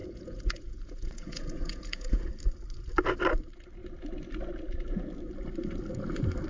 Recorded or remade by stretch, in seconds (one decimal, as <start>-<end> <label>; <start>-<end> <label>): 0.0-2.3 remade; 2.3-6.5 recorded